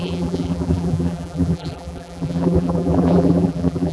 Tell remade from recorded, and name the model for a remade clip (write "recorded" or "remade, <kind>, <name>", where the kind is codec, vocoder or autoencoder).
remade, vocoder, BigVGAN v2